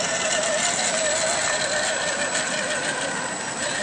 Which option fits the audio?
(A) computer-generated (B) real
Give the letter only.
B